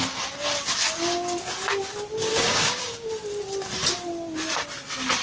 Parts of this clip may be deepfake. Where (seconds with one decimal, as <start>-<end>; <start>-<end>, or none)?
2.3-3.1